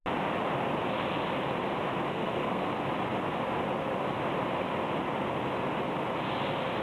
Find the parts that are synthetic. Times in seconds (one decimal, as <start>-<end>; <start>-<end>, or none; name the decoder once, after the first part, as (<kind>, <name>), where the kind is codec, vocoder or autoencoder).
2.1-2.7 (codec, SNAC)